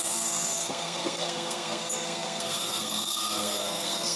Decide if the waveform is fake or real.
fake